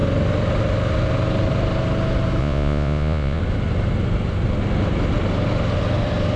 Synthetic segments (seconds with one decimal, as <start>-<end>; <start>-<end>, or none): 2.4-3.4